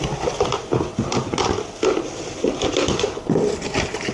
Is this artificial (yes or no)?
no